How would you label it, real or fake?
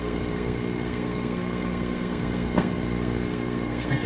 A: fake